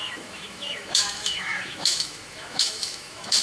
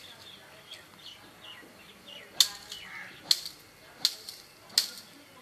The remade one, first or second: first